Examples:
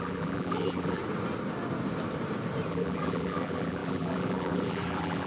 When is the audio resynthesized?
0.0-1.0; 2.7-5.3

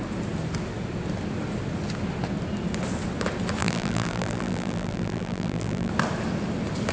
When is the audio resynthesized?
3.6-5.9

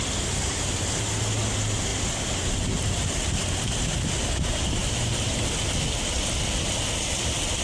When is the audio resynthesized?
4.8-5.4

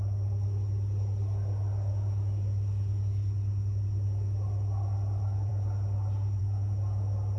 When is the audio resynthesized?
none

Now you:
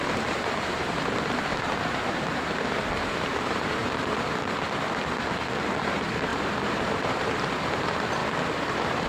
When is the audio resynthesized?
0.0-3.8; 5.8-8.2; 8.7-9.1

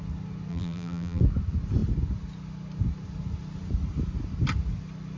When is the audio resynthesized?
0.5-1.2

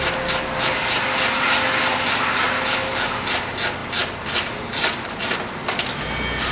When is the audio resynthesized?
3.8-5.2